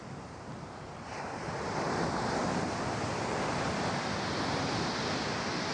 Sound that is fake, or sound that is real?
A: real